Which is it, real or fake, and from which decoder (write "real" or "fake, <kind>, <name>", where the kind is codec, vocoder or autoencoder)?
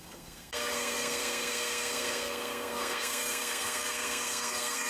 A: fake, codec, SNAC